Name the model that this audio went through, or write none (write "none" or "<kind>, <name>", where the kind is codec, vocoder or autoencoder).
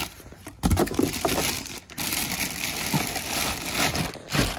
none